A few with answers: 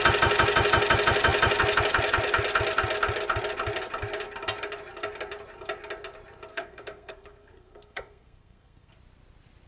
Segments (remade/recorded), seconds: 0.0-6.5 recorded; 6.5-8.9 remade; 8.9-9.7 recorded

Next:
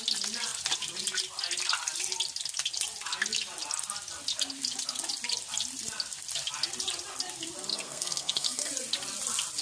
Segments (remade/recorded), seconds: 0.0-7.7 recorded; 7.7-8.7 remade; 8.7-9.6 recorded

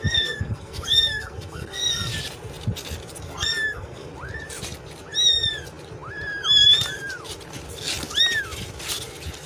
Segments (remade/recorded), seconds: 0.0-2.1 remade; 2.1-3.2 recorded; 3.2-4.1 remade; 4.1-9.5 recorded

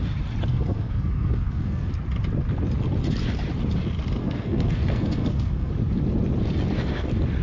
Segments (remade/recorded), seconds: 0.0-0.5 recorded; 0.5-1.9 remade; 1.9-4.2 recorded; 4.2-5.7 remade; 5.7-7.4 recorded

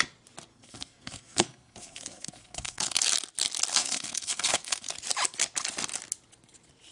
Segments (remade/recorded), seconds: 0.0-0.5 recorded; 0.5-3.0 remade; 3.0-3.7 recorded; 3.7-4.9 remade; 4.9-6.9 recorded